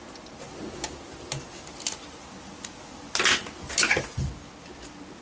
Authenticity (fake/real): real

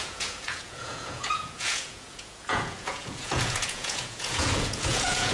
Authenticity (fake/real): fake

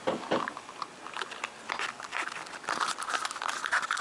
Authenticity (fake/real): real